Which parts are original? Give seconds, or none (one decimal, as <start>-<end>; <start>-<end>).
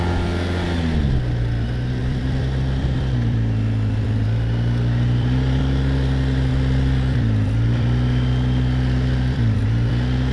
0.0-2.0; 5.6-6.5; 9.9-10.3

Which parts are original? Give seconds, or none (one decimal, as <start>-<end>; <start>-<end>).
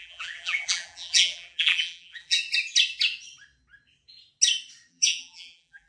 2.4-4.9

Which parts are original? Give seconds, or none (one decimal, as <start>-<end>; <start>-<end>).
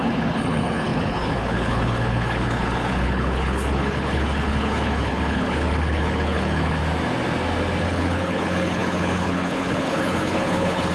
6.8-7.8